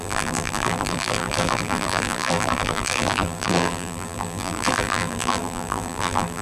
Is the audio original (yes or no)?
no